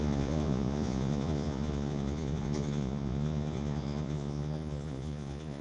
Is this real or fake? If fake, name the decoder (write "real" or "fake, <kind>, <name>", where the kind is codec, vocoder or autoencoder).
fake, vocoder, Vocos